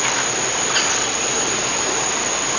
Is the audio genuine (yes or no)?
yes